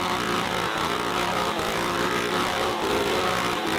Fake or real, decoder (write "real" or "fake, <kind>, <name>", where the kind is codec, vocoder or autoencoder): fake, vocoder, BigVGAN v2